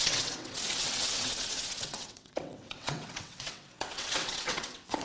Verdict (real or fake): fake